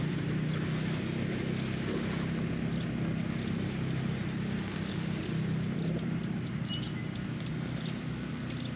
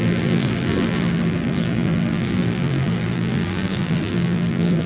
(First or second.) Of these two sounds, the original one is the first